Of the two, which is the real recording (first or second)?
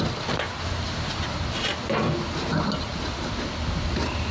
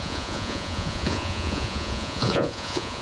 first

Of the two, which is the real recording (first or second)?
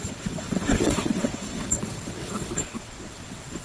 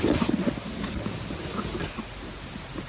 second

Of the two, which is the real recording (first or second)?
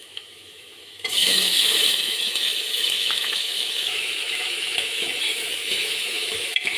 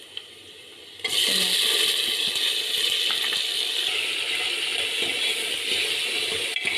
second